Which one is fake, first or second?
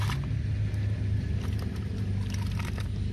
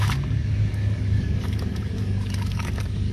second